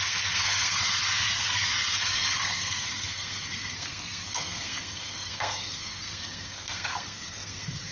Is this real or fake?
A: fake